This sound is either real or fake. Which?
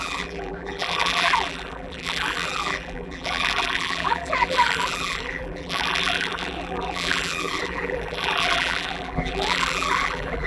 fake